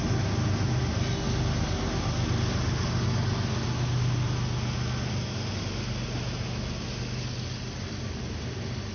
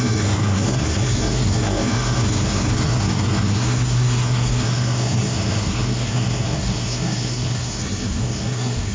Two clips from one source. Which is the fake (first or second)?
second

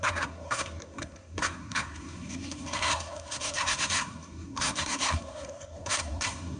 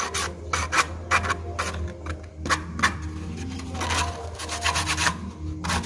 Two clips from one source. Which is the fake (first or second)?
first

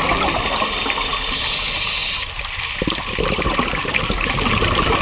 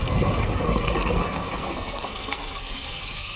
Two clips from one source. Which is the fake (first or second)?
second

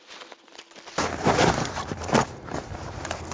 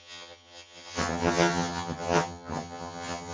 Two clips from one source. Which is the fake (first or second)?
second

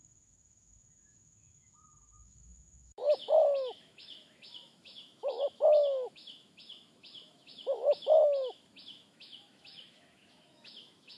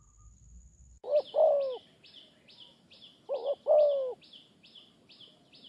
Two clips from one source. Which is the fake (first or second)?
first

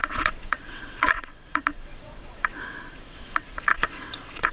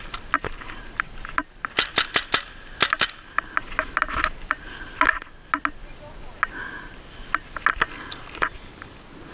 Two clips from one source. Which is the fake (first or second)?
first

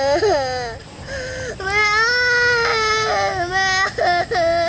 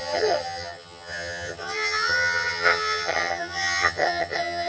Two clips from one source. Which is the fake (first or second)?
second